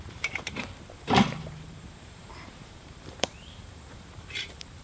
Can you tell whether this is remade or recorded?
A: remade